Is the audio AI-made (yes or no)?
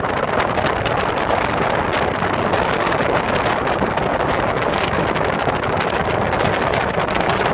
no